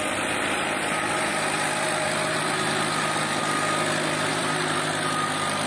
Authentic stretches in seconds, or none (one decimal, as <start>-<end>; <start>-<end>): 0.0-1.3; 3.4-4.3

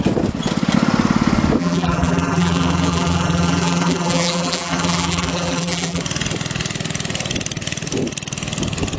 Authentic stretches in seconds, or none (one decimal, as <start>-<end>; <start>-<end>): 0.0-1.6; 6.0-9.0